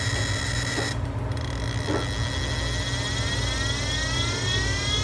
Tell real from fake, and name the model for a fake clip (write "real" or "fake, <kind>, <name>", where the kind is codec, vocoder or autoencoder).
real